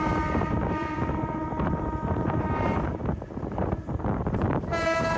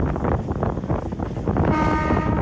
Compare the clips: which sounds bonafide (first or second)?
second